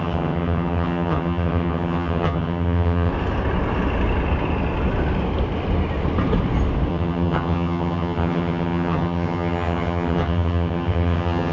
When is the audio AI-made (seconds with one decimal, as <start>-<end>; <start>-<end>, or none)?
0.0-3.1; 6.9-11.5